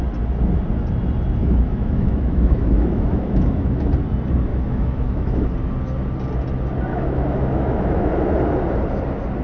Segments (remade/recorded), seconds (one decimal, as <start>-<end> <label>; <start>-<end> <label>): 0.0-1.4 recorded; 1.4-3.9 remade; 3.9-4.5 recorded; 4.5-5.5 remade; 5.5-6.9 recorded; 6.9-8.1 remade; 8.1-9.4 recorded